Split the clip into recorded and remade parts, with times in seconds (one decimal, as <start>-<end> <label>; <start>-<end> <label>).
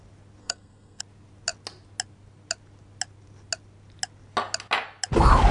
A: 0.0-0.4 recorded; 0.4-1.0 remade; 1.0-5.5 recorded